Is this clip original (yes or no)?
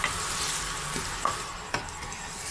yes